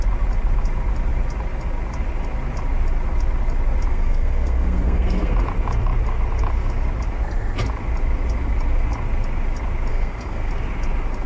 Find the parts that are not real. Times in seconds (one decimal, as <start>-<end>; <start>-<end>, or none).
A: 3.9-5.3; 9.9-10.5